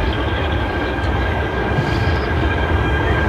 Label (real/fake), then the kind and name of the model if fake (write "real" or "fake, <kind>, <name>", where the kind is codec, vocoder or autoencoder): fake, codec, DAC